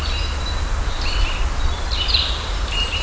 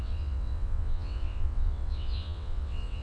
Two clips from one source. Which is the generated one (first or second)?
second